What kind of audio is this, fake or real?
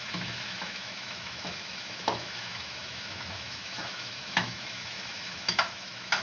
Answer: fake